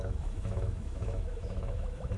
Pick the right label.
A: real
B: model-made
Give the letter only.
B